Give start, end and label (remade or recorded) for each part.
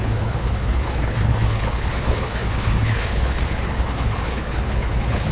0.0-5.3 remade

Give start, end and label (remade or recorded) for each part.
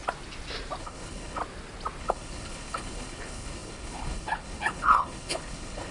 0.0-0.8 recorded; 0.8-1.4 remade; 1.4-2.0 recorded; 2.0-5.9 remade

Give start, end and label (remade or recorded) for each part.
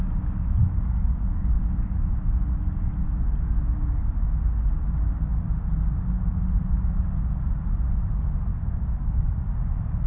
0.0-8.5 recorded; 8.5-9.5 remade; 9.5-10.1 recorded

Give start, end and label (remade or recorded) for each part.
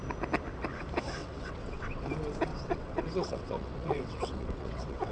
0.0-1.2 recorded; 1.2-2.0 remade; 2.0-2.5 recorded; 2.5-5.1 remade